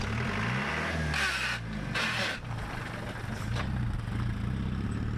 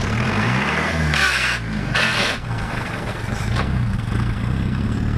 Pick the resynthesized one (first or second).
second